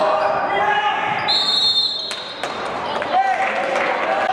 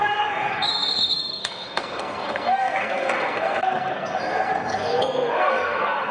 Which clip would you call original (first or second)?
first